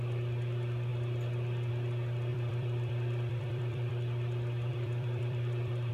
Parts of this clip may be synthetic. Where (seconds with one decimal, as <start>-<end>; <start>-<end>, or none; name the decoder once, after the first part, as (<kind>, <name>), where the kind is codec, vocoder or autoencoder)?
2.3-3.9 (vocoder, BigVGAN v2); 4.7-5.9